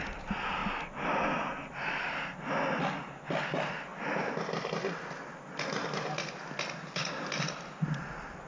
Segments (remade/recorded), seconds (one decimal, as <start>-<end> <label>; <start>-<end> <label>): 0.0-8.5 recorded